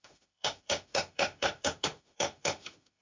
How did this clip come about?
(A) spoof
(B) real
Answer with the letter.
A